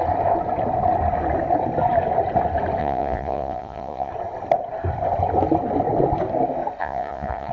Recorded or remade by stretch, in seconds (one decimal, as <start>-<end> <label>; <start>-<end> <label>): 0.0-2.8 recorded; 2.8-4.1 remade; 4.1-6.8 recorded; 6.8-7.5 remade